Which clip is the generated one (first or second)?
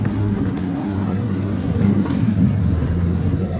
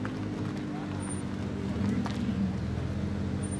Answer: first